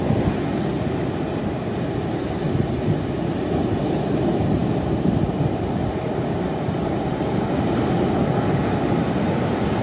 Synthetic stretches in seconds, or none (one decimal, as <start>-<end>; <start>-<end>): none